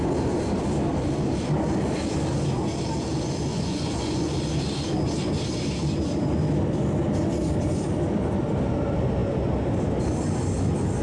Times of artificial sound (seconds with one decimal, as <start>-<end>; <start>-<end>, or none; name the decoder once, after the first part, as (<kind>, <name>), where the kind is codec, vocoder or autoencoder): 3.5-4.3 (vocoder, Vocos)